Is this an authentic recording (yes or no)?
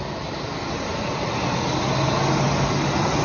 yes